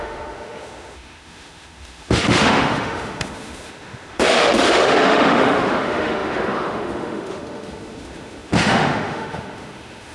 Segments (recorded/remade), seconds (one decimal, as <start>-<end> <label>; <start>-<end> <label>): 0.0-10.1 remade